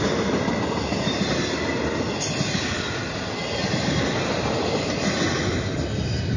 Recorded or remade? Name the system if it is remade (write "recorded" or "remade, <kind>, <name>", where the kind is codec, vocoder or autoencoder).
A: recorded